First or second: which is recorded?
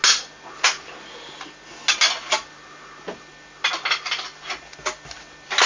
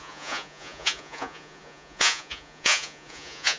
first